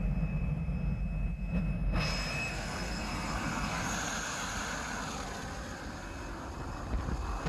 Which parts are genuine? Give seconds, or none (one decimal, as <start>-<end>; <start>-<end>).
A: 0.0-2.5; 3.8-7.5